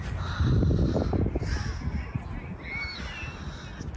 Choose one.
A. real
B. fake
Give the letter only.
A